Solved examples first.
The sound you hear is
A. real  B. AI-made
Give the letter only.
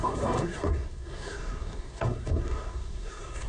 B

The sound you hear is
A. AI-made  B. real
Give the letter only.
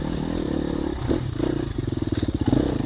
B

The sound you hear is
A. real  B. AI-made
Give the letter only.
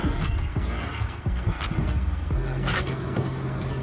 B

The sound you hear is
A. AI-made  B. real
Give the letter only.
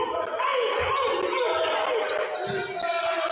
B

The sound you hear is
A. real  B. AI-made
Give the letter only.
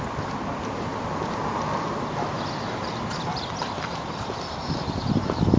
A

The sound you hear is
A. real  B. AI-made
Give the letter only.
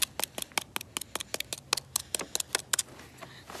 A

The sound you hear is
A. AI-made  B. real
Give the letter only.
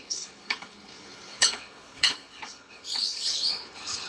A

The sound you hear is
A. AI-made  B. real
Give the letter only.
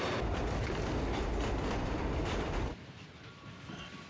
B